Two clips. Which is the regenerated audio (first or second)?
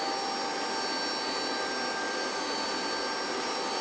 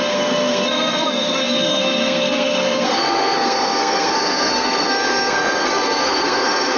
second